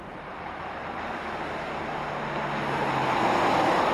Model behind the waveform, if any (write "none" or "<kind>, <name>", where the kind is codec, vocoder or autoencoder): none